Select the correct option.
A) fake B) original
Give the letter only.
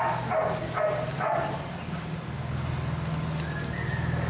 B